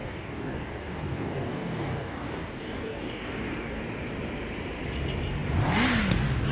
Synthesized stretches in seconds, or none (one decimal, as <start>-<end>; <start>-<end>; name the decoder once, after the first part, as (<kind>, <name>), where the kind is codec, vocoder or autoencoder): 0.0-3.8 (codec, DAC)